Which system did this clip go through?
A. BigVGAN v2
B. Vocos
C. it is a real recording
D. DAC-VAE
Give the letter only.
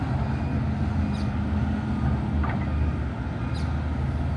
C